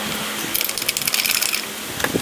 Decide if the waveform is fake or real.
real